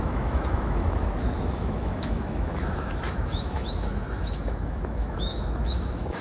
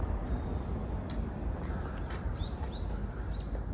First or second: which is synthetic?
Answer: first